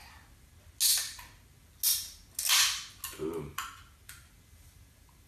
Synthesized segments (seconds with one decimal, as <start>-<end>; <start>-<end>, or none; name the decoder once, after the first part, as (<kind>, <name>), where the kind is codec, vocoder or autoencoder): none